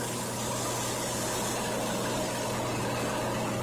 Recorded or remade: recorded